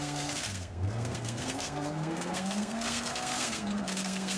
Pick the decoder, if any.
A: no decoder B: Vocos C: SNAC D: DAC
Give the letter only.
C